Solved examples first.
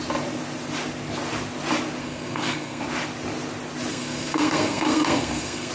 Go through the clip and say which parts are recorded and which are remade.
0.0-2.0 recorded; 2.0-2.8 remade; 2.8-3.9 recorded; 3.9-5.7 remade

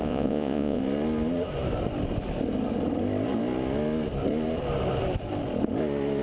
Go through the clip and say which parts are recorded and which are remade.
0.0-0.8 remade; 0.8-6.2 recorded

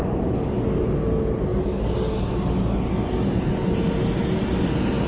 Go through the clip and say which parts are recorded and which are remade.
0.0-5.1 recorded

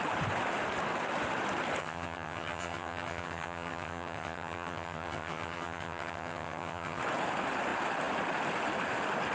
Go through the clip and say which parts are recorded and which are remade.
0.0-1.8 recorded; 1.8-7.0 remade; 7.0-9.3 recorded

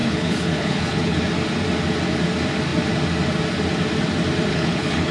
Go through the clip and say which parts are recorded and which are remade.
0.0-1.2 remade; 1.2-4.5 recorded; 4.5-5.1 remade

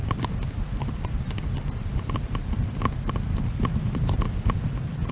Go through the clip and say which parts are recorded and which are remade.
0.0-5.1 recorded

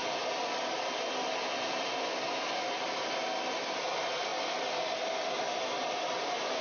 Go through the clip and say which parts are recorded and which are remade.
0.0-6.6 recorded